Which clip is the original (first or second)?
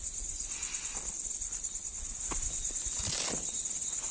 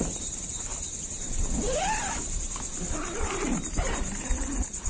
first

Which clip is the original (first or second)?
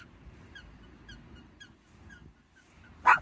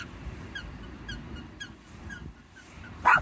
first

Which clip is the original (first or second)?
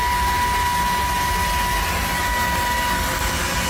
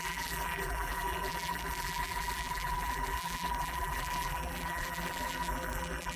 first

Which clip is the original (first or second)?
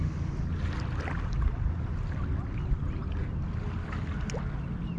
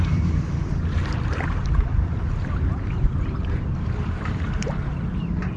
first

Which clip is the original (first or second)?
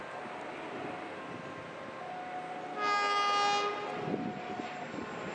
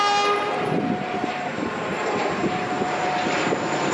first